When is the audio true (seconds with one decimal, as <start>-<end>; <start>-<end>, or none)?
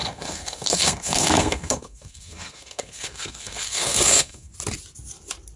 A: 4.5-5.6